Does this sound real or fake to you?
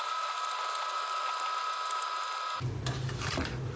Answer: real